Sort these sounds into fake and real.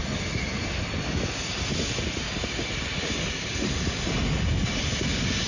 real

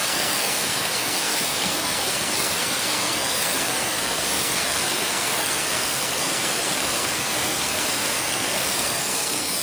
fake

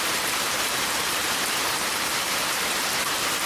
fake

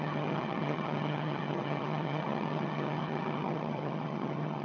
fake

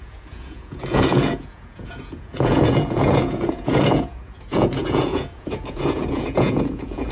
fake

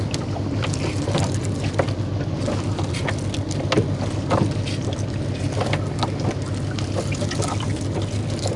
real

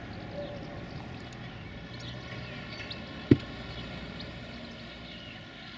real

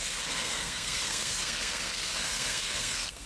fake